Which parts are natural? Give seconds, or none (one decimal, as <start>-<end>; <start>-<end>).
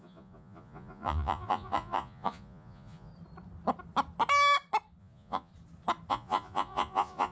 3.1-5.0; 5.5-6.1